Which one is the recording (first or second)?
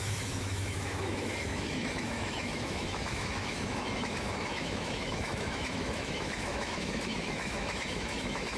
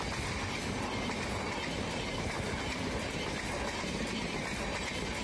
second